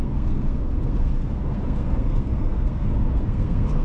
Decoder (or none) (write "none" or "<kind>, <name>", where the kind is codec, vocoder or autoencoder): codec, SNAC